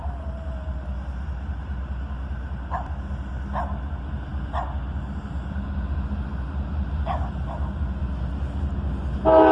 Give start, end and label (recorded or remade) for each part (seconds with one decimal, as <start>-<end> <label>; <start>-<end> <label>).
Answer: 0.0-9.5 recorded